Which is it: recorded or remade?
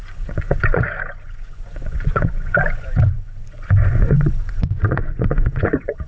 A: remade